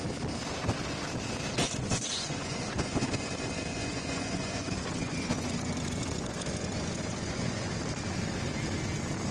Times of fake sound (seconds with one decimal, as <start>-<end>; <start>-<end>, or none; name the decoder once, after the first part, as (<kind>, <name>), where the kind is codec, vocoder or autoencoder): 1.6-3.3 (vocoder, Vocos); 3.7-7.7

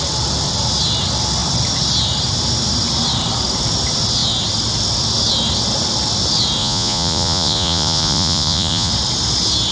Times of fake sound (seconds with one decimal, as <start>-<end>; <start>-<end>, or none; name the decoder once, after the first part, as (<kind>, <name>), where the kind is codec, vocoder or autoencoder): 6.6-8.9 (vocoder, Vocos)

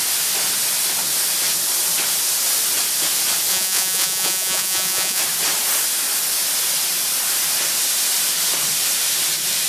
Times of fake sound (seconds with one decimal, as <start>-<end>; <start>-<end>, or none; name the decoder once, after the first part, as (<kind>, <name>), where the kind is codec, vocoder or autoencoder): 3.5-5.2 (vocoder, Vocos)

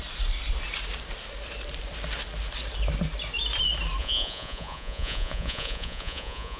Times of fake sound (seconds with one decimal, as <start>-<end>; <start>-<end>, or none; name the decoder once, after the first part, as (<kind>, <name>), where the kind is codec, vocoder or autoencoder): 4.0-6.6 (vocoder, Vocos)

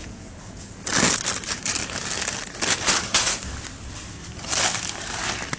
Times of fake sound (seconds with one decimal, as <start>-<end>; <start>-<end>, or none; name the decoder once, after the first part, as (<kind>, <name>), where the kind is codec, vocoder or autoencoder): 0.0-0.7 (vocoder, Vocos)

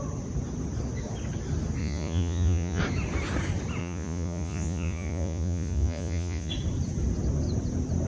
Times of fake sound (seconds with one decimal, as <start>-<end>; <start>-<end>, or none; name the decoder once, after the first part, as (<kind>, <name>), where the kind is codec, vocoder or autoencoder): 1.8-2.8 (vocoder, Vocos); 3.8-6.5